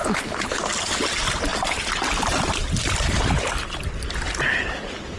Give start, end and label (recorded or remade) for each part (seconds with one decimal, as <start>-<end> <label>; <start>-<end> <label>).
0.0-0.6 remade; 0.6-5.2 recorded